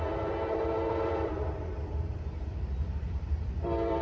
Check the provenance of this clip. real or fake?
fake